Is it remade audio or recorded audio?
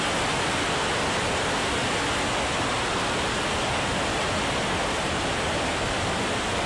recorded